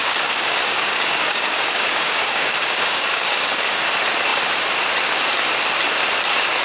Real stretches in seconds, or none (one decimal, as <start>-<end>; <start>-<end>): 3.8-6.6